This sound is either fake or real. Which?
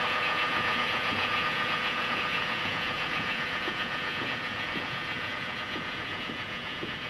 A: fake